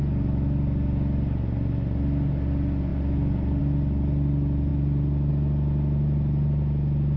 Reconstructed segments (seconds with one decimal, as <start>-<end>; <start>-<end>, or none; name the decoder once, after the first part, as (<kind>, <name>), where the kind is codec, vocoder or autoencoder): 2.9-3.6 (vocoder, BigVGAN v2); 4.7-5.3